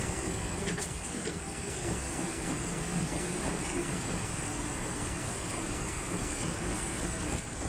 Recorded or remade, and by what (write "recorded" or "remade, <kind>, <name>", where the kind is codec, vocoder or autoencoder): remade, codec, SNAC